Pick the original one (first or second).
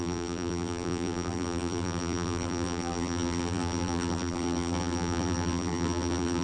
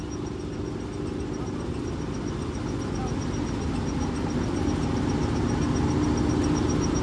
second